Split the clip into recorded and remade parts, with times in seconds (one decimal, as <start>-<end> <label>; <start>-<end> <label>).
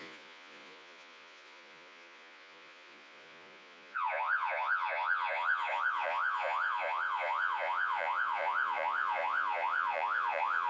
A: 0.0-10.7 remade